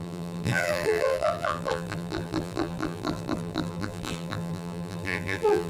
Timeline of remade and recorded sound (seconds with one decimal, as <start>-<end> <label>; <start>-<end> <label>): 0.0-5.7 remade